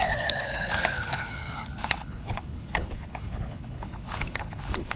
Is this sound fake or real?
fake